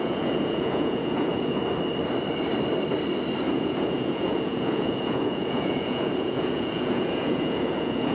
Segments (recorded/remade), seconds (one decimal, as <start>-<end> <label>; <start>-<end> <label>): 0.0-1.6 remade; 1.6-3.5 recorded; 3.5-8.1 remade